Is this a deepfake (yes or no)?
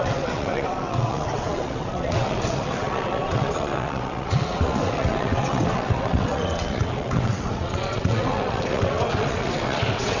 yes